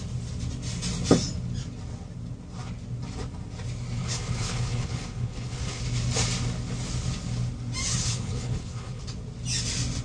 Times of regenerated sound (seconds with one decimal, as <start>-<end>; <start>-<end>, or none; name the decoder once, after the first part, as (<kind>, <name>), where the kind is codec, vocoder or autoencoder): 4.0-5.8 (codec, HILCodec); 7.9-9.0